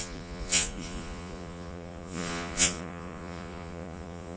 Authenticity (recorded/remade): remade